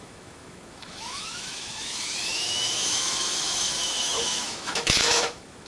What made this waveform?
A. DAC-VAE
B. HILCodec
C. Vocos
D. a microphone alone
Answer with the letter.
A